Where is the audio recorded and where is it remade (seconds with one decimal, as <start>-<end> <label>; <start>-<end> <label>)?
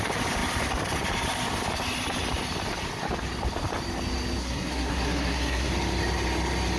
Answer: 0.0-4.4 recorded; 4.4-5.7 remade; 5.7-6.8 recorded